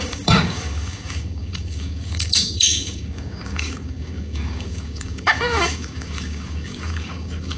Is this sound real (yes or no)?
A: no